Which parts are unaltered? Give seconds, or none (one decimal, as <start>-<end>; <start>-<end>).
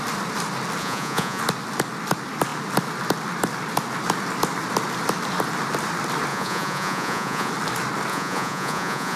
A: 0.0-0.8; 1.4-6.3; 7.5-8.1